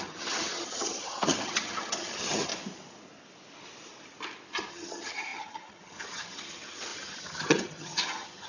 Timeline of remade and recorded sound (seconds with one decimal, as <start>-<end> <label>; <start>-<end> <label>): 0.0-2.5 remade; 2.5-4.7 recorded; 4.7-8.5 remade